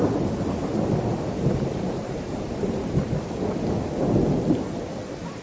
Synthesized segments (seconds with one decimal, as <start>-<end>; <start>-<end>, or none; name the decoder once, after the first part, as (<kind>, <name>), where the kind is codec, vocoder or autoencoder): 1.1-3.0 (vocoder, BigVGAN v2)